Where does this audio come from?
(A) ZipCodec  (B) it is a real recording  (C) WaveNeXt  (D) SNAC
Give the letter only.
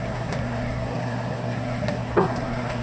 D